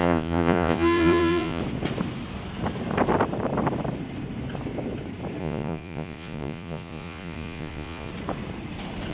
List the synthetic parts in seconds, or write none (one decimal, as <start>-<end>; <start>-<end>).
0.0-1.6; 5.4-8.1